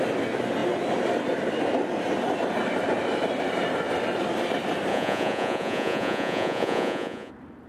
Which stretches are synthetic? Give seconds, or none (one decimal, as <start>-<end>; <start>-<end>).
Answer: 4.9-7.3